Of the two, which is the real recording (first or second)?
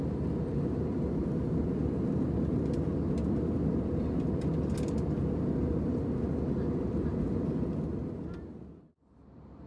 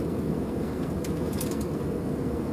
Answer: first